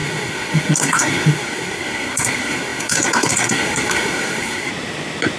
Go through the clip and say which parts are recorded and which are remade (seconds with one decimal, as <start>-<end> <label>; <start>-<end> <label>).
0.0-4.7 remade; 4.7-5.4 recorded